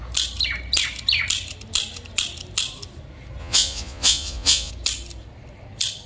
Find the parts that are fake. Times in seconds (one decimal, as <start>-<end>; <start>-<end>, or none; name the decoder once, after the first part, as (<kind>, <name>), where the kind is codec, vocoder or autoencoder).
3.4-4.7 (vocoder, Vocos)